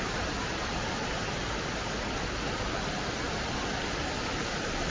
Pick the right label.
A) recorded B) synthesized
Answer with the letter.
A